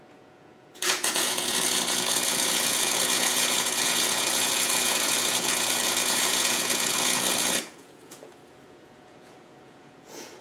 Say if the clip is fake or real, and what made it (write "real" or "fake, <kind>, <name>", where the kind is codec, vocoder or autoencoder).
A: fake, vocoder, Vocos